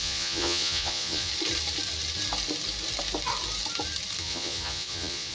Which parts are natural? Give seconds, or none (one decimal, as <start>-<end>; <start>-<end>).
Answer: 1.3-4.2